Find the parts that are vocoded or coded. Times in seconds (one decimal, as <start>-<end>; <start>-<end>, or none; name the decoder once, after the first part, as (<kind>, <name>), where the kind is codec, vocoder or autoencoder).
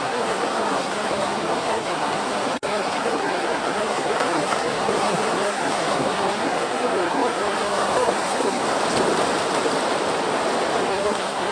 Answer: 0.0-8.6 (codec, SNAC); 10.9-11.5